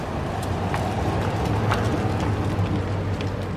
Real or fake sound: real